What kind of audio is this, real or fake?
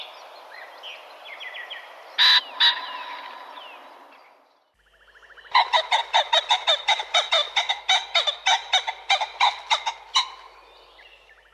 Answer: real